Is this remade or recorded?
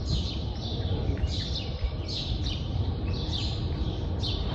remade